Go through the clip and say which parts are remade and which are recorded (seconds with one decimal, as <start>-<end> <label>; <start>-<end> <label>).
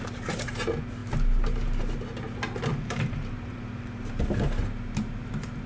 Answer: 0.0-2.7 recorded; 2.7-4.2 remade; 4.2-5.7 recorded